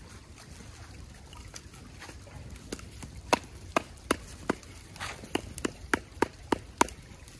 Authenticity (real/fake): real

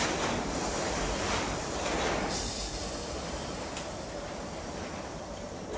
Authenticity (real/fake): fake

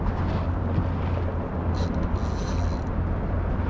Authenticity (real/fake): real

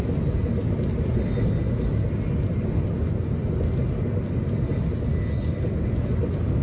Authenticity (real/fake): real